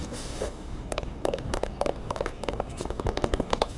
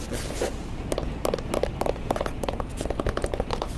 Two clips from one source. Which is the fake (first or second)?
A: first